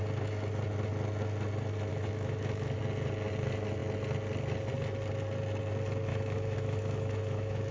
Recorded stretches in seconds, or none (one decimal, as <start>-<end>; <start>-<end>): 0.0-1.9; 2.8-6.1